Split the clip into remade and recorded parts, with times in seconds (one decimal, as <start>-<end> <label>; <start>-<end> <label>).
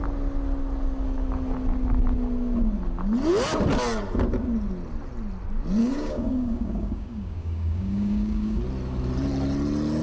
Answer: 0.0-5.8 recorded; 5.8-8.6 remade; 8.6-10.0 recorded